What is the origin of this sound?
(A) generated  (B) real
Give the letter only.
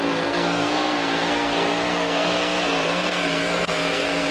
A